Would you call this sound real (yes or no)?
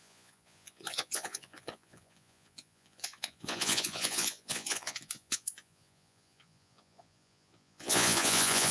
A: no